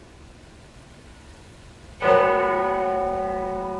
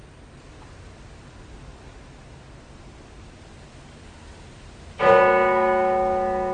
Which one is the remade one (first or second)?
first